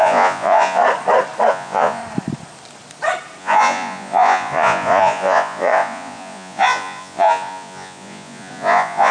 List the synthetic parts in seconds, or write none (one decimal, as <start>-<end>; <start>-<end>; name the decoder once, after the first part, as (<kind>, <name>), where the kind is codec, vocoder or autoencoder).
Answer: 0.0-0.8 (vocoder, Vocos); 1.5-2.0; 3.4-9.1